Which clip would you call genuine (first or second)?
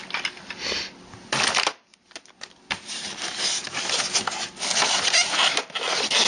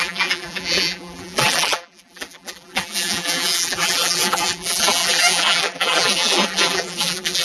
first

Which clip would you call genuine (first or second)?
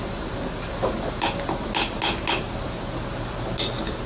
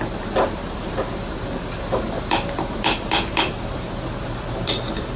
first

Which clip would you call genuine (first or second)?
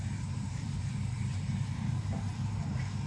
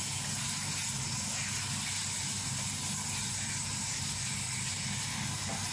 second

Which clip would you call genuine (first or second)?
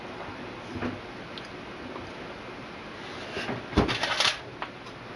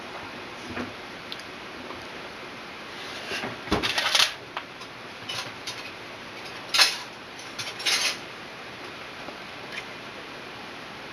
first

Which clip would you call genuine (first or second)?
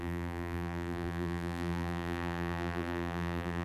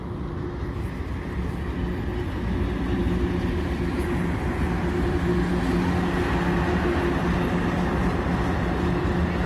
second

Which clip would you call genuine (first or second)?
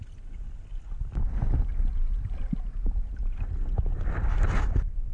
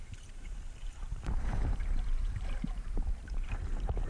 first